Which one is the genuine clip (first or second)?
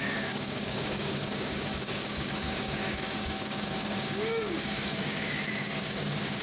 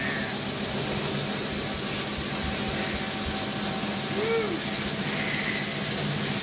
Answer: second